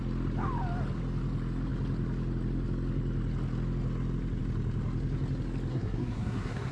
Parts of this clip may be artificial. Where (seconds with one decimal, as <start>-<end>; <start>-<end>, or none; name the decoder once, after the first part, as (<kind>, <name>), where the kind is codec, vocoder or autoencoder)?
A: 5.7-6.7 (codec, SNAC)